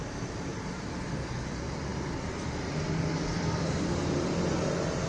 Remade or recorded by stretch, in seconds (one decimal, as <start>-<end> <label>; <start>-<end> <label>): 0.0-0.5 recorded; 0.5-1.1 remade; 1.1-1.9 recorded; 1.9-5.1 remade